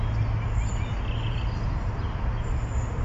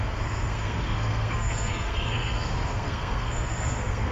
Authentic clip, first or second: first